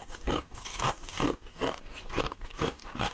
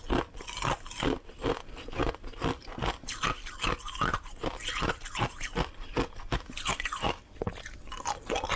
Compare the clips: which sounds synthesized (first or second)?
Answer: first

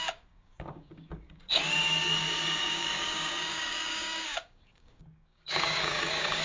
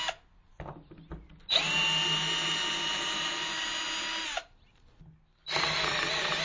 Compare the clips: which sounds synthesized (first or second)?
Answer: first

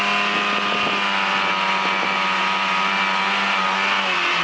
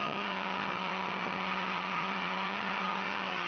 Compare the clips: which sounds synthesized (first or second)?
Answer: second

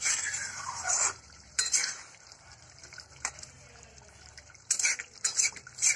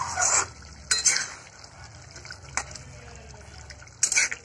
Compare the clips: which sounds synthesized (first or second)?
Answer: first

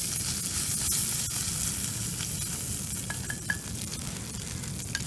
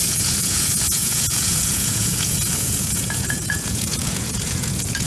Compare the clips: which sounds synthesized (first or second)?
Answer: second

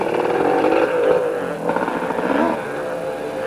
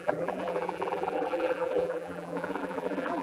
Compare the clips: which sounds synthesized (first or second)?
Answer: second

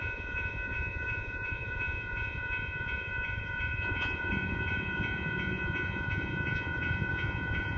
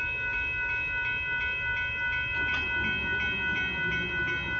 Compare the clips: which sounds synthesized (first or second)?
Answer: first